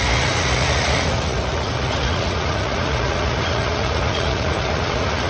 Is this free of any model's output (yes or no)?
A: no